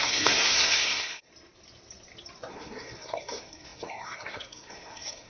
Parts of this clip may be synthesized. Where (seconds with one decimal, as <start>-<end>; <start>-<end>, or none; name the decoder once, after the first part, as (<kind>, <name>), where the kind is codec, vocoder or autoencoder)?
0.0-1.3 (codec, SNAC); 2.5-5.3